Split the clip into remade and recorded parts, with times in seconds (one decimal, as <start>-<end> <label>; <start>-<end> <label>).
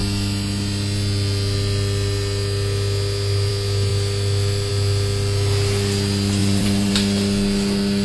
0.0-6.4 recorded; 6.4-6.9 remade; 6.9-8.0 recorded